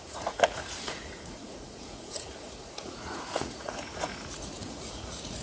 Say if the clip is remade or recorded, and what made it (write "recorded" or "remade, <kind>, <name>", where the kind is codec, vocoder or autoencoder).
remade, vocoder, Vocos